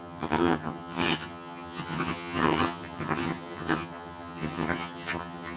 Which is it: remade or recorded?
remade